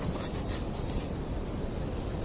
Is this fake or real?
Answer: real